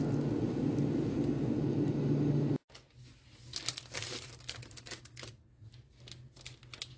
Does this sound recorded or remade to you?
recorded